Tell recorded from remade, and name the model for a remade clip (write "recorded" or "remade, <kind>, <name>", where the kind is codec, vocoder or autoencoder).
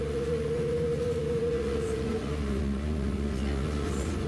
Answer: remade, vocoder, Vocos